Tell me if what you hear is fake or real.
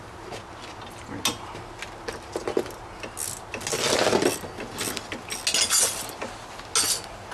real